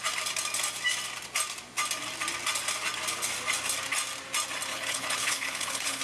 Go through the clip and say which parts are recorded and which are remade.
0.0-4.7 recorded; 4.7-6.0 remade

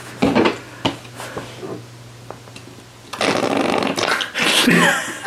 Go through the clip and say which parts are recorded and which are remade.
0.0-5.3 recorded

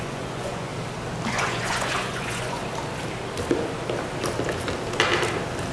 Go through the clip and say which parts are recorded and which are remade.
0.0-0.7 remade; 0.7-1.3 recorded; 1.3-2.6 remade; 2.6-5.7 recorded

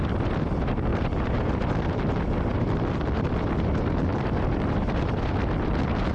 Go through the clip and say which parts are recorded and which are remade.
0.0-0.9 recorded; 0.9-1.7 remade; 1.7-2.5 recorded; 2.5-3.3 remade; 3.3-4.1 recorded; 4.1-5.2 remade; 5.2-6.1 recorded

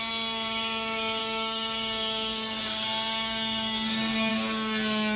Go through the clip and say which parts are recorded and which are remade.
0.0-1.2 recorded; 1.2-4.3 remade; 4.3-5.2 recorded

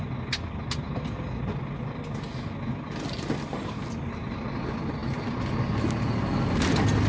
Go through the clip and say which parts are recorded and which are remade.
0.0-7.1 recorded